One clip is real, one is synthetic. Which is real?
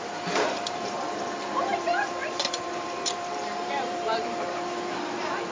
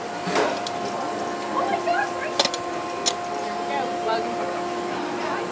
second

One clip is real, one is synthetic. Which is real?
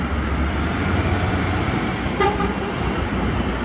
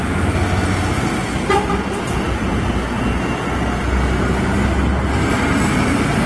second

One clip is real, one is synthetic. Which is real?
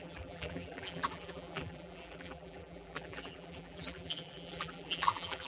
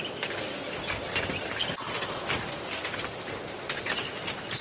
second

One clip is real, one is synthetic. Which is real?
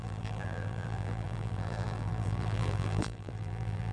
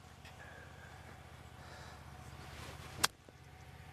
second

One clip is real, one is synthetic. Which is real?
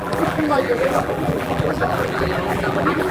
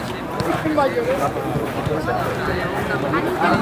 second